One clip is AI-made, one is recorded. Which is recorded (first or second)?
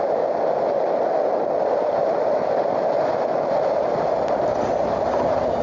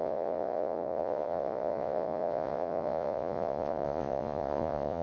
first